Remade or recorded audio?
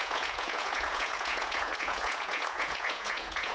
remade